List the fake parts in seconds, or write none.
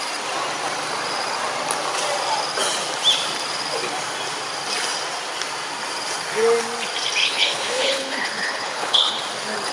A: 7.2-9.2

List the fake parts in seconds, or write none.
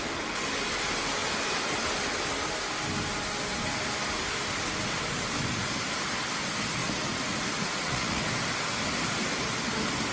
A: 6.8-8.2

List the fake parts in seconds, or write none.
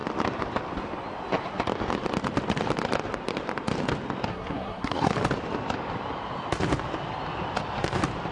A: 4.3-5.1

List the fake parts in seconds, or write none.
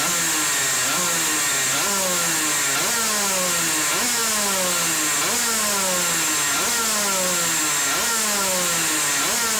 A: none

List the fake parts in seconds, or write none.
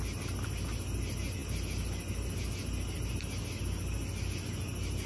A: none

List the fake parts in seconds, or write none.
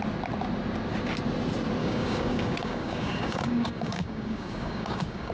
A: 1.8-5.3